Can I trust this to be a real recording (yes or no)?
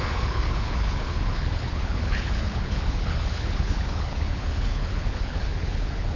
no